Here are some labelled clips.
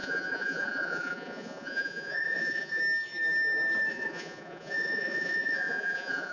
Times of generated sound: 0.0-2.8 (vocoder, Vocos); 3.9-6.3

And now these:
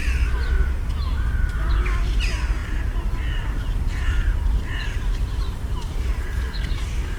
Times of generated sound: 0.0-7.2 (vocoder, BigVGAN v2)

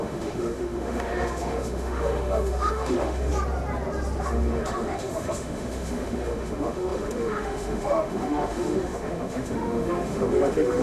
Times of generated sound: 0.0-3.3 (autoencoder, DAC-VAE); 4.2-10.8

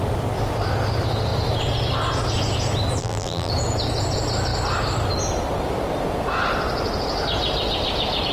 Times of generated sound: 3.0-3.5 (vocoder, BigVGAN v2)